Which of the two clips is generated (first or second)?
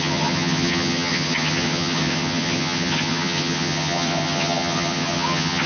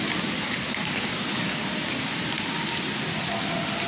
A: first